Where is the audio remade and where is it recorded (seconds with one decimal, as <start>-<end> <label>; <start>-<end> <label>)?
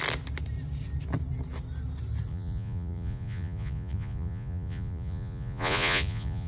0.0-2.3 recorded; 2.3-6.5 remade